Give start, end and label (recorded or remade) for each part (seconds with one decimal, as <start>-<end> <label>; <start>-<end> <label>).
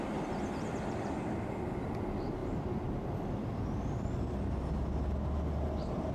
0.0-6.1 recorded